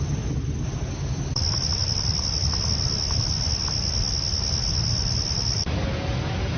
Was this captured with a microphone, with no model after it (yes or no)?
yes